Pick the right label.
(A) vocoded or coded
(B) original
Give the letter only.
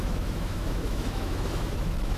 A